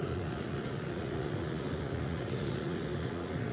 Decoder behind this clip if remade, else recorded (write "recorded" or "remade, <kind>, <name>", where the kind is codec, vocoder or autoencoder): remade, vocoder, Vocos